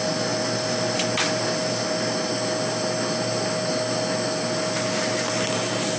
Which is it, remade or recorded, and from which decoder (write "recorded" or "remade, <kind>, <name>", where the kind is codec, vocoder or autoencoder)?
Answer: recorded